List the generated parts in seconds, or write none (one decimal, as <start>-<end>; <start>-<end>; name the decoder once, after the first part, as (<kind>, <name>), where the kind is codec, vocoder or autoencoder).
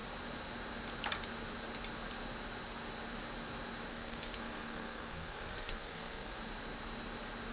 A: 3.9-6.4 (codec, SNAC)